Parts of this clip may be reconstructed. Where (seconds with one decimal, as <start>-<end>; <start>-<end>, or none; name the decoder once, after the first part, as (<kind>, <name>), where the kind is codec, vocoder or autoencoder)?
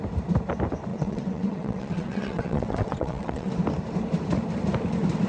0.9-3.5 (vocoder, WaveNeXt)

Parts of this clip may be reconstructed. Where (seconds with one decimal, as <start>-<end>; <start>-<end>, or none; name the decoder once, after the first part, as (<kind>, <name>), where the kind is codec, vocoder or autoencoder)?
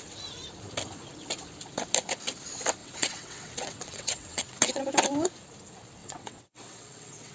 2.8-4.8 (vocoder, WaveNeXt); 6.0-7.3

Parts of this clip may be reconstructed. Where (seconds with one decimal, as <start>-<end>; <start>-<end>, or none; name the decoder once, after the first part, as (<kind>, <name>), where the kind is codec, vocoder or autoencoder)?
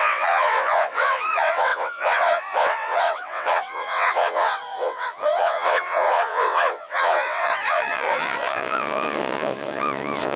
0.0-10.4 (vocoder, WaveNeXt)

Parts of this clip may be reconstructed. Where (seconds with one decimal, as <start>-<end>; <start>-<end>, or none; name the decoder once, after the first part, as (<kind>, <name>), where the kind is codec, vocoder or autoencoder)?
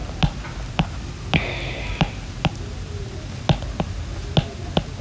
none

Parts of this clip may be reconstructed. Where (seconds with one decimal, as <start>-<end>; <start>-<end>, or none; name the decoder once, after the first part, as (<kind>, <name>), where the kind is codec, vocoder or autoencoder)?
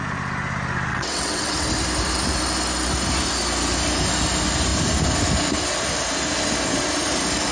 0.9-1.7 (vocoder, WaveNeXt)